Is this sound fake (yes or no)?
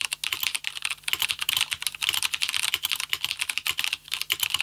no